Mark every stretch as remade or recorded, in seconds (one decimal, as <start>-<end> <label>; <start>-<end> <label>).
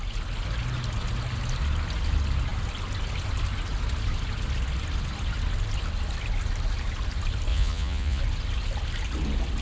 0.0-7.5 recorded; 7.5-8.2 remade; 8.2-9.6 recorded